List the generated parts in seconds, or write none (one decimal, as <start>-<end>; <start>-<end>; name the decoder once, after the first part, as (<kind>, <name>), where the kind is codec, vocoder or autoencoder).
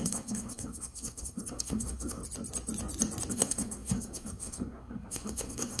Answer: 0.0-2.2 (codec, SNAC); 3.3-5.8